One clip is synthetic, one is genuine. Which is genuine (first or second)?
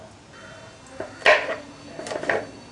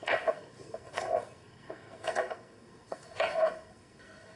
first